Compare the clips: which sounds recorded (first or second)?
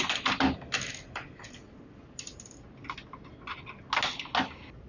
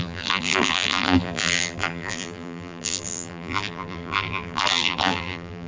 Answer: first